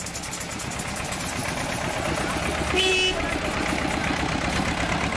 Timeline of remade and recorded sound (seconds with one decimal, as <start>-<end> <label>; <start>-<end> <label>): 0.0-5.2 recorded